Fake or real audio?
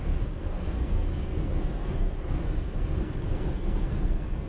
fake